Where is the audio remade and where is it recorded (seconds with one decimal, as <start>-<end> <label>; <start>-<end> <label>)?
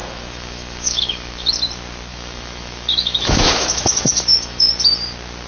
0.0-1.5 remade; 1.5-2.1 recorded; 2.1-4.7 remade; 4.7-5.5 recorded